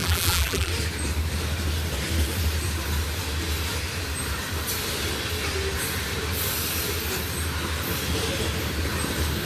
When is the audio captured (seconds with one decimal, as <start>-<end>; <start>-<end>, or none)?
0.7-9.5